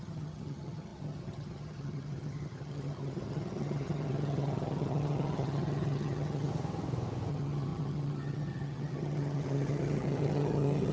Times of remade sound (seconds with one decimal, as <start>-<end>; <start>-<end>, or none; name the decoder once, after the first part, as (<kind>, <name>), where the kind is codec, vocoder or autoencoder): 0.0-6.5 (vocoder, HiFi-GAN); 7.3-10.9